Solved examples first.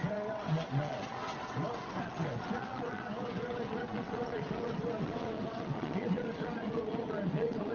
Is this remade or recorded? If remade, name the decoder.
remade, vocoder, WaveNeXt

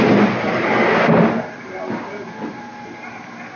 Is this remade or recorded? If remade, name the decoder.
recorded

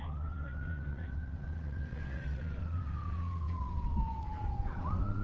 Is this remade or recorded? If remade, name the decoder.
remade, vocoder, WaveNeXt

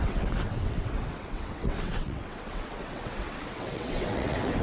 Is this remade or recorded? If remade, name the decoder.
remade, vocoder, WaveNeXt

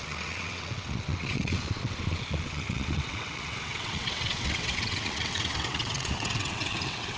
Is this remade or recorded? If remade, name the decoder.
remade, vocoder, WaveNeXt